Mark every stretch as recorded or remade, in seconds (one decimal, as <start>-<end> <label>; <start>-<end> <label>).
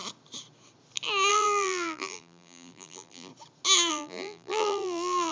0.0-1.3 recorded; 1.3-3.3 remade; 3.3-3.9 recorded; 3.9-5.3 remade